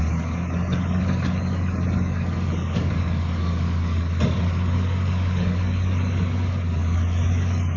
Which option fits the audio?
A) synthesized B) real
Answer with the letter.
A